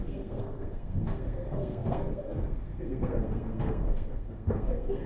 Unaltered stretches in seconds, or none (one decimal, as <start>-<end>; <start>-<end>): none

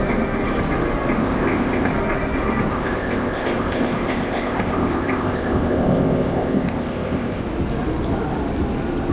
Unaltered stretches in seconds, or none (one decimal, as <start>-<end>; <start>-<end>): 0.0-1.2; 1.9-2.7; 7.4-9.1

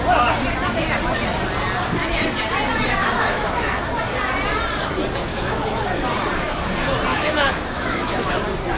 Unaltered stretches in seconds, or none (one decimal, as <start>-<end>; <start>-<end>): 0.0-3.0; 3.8-5.3; 5.8-7.1; 8.3-8.8

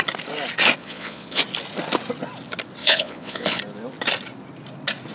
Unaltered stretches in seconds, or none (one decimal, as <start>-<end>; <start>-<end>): 0.0-0.8; 1.4-2.8; 3.6-5.1